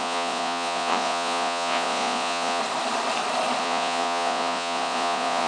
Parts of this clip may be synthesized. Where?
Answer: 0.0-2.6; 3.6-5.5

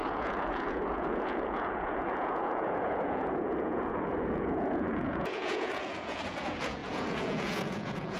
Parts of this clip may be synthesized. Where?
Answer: 0.0-8.2

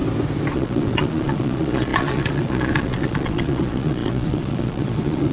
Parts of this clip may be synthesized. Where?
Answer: 0.5-5.3

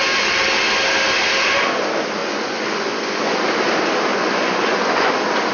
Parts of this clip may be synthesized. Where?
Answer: 2.2-3.4; 4.1-5.1

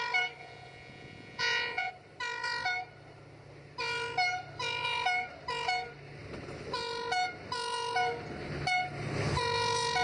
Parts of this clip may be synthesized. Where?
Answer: 0.4-1.9

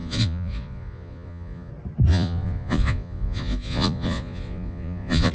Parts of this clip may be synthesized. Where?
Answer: 0.0-1.7; 2.1-5.3

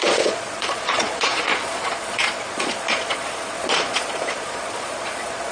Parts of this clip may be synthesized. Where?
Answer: 0.0-5.5

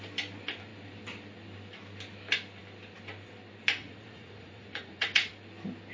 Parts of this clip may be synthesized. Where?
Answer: 3.8-5.3